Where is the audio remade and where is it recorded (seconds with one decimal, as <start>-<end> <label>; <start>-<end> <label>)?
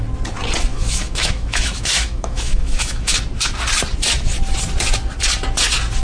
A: 0.0-0.7 recorded; 0.7-3.1 remade; 3.1-6.0 recorded